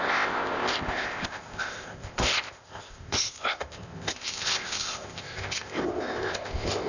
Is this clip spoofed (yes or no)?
yes